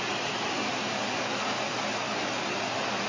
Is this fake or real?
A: fake